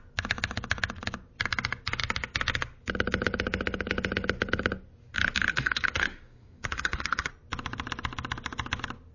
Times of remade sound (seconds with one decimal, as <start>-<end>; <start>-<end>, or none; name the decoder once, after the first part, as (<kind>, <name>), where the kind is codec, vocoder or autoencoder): 5.5-7.3 (codec, SNAC)